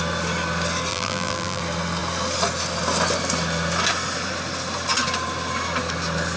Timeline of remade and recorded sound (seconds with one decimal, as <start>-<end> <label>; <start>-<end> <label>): 0.0-0.9 recorded; 0.9-1.6 remade; 1.6-6.4 recorded